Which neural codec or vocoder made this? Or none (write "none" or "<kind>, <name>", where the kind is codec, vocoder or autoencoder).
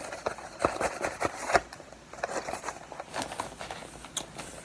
none